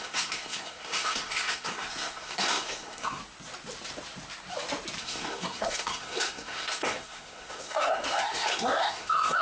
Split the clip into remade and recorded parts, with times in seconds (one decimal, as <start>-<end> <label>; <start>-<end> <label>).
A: 0.0-3.2 remade; 3.2-5.0 recorded; 5.0-9.4 remade